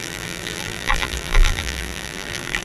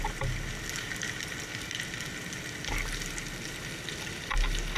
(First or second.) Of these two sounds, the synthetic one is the first